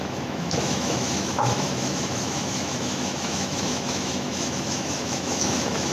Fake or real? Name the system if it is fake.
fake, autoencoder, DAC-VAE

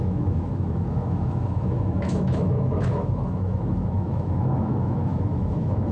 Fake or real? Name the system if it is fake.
fake, autoencoder, DAC-VAE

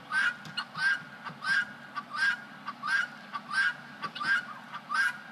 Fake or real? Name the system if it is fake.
real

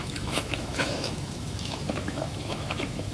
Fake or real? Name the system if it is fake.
fake, autoencoder, DAC-VAE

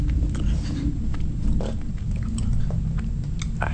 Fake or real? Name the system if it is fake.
real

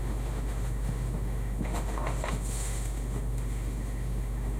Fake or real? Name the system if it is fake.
fake, autoencoder, DAC-VAE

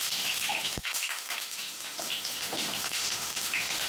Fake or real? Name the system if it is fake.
fake, autoencoder, DAC-VAE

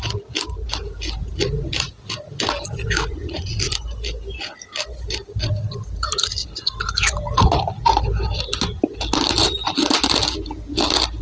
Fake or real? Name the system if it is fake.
real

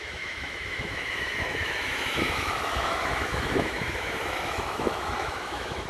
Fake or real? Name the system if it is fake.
fake, autoencoder, DAC-VAE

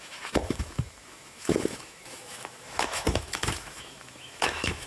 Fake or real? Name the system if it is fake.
fake, autoencoder, DAC-VAE